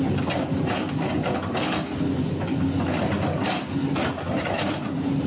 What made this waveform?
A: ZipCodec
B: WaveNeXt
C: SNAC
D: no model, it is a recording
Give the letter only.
D